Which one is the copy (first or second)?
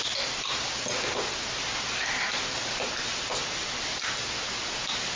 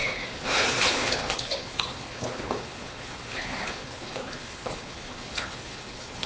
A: second